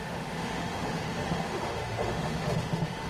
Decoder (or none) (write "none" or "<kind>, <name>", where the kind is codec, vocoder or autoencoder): autoencoder, DAC-VAE